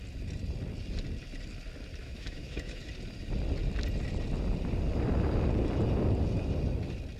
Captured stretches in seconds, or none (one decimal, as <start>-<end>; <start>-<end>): 0.0-2.0; 2.8-7.2